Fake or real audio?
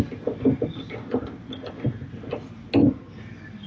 real